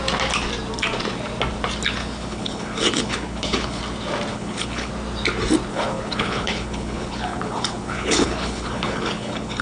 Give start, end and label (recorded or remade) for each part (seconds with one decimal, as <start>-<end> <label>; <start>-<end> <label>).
0.0-2.0 recorded; 2.0-3.8 remade; 3.8-4.3 recorded; 4.3-4.9 remade; 4.9-5.7 recorded; 5.7-9.6 remade